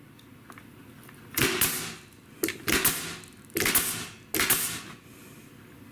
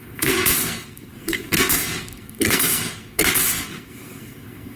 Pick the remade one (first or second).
second